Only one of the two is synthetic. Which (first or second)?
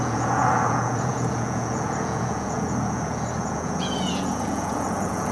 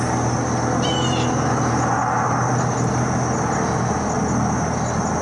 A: first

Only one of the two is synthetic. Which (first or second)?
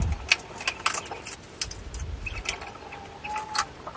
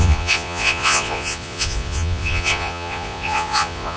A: second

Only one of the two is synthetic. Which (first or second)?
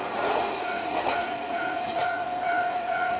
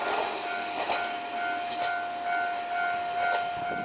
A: first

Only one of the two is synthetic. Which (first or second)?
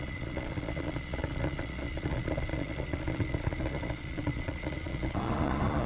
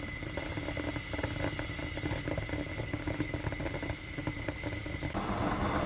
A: first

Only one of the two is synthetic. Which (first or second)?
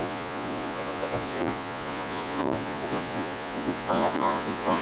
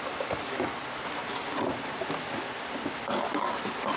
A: first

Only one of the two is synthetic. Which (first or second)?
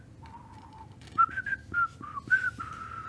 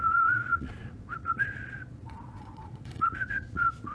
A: second